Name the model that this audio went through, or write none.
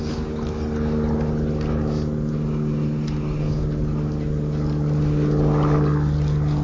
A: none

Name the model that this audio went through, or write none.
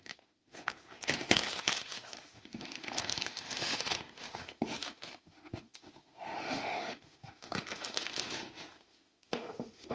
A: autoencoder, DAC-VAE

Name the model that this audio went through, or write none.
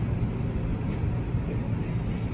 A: none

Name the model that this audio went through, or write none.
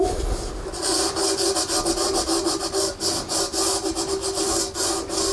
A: none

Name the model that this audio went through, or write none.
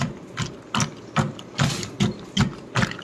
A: none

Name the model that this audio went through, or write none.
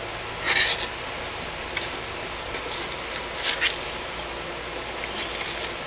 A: none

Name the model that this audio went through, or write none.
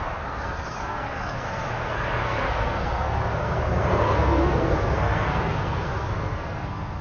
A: codec, SNAC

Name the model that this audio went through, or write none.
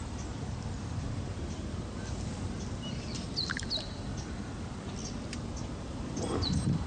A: none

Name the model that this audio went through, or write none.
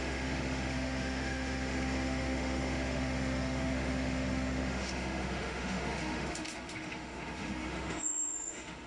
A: autoencoder, DAC-VAE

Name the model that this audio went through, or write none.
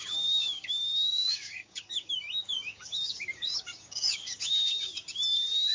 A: codec, DAC